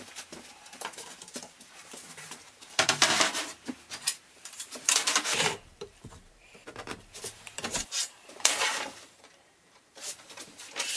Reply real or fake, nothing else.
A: fake